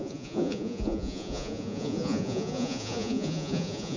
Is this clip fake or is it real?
fake